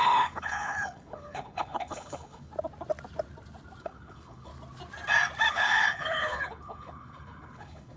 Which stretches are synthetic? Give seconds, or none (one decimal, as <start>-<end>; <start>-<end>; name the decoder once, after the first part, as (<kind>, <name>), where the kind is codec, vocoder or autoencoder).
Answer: 0.0-2.5 (codec, HILCodec); 3.8-4.5; 5.5-8.0